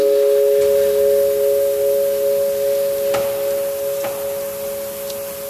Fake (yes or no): no